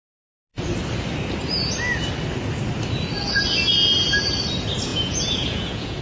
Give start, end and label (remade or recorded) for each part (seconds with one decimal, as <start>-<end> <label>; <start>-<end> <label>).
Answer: 0.0-4.9 recorded; 4.9-6.0 remade